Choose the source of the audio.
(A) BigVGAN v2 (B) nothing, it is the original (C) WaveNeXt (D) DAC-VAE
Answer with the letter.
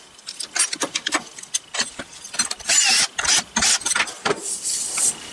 B